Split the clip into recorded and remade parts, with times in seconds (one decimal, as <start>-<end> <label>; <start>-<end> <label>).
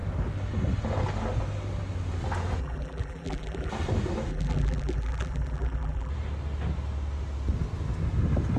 0.0-2.6 recorded; 2.6-3.7 remade; 3.7-4.3 recorded; 4.3-6.1 remade; 6.1-8.6 recorded